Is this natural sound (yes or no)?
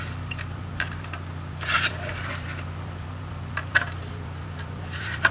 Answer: no